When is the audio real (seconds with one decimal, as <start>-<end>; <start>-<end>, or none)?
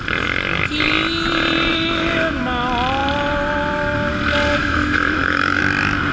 0.0-1.7; 2.4-4.6; 5.6-6.1